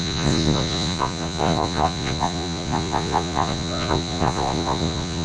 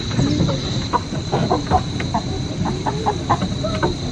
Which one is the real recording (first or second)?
second